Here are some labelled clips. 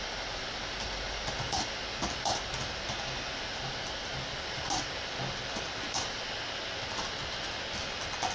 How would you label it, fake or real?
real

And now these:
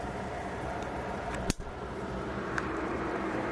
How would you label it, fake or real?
fake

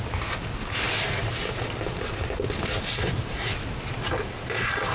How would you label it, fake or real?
real